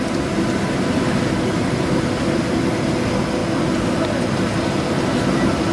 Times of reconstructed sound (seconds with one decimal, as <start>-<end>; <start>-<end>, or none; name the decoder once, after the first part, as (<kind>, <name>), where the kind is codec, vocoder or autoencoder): none